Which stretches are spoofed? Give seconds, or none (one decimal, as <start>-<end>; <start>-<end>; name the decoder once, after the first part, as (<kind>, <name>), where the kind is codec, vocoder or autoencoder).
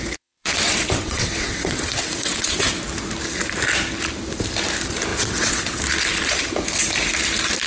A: 0.0-2.8 (vocoder, WaveNeXt); 5.1-5.8